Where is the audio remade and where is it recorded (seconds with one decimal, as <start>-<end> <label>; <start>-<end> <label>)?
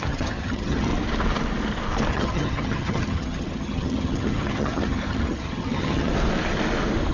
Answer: 0.0-0.9 remade; 0.9-2.1 recorded; 2.1-6.1 remade; 6.1-7.1 recorded